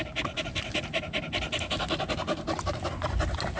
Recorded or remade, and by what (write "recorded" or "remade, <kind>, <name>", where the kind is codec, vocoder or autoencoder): recorded